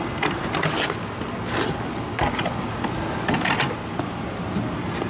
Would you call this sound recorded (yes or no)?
yes